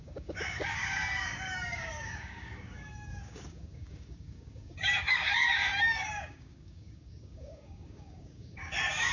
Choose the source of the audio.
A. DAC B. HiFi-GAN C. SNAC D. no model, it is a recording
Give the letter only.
A